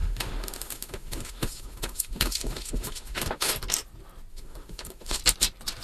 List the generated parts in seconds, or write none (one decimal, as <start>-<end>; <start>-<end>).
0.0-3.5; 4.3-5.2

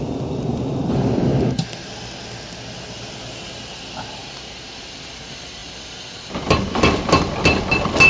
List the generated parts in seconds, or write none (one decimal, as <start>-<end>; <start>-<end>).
none

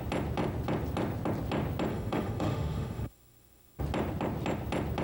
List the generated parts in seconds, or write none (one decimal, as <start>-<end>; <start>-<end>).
1.9-3.8

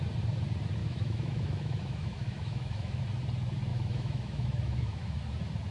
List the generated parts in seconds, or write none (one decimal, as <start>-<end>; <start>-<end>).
0.8-3.0; 3.7-5.3